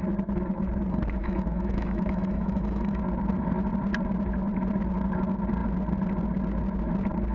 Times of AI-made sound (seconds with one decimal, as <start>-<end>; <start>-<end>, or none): 1.2-3.0